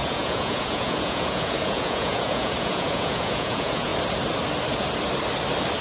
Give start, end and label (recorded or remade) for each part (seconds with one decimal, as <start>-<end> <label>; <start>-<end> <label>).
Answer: 0.0-3.9 remade; 3.9-5.8 recorded